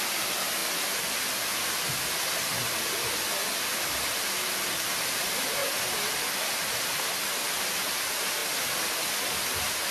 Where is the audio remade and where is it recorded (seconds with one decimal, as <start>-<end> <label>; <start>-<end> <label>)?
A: 0.0-9.9 recorded